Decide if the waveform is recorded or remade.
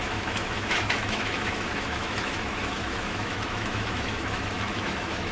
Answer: remade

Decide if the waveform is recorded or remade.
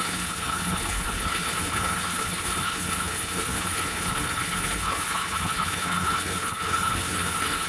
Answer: remade